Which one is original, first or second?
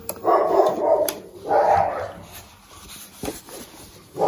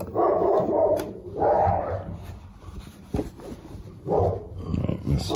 first